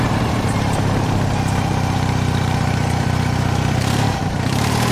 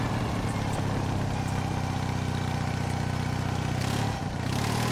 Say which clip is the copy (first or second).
first